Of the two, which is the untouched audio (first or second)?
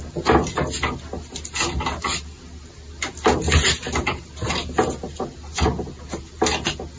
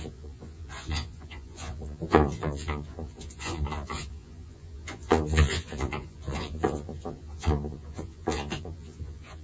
first